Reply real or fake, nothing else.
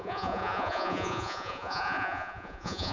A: fake